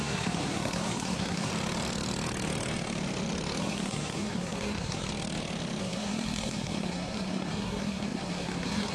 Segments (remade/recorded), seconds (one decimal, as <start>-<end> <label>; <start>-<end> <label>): 0.0-1.5 remade; 1.5-3.6 recorded; 3.6-5.1 remade; 5.1-5.8 recorded; 5.8-8.9 remade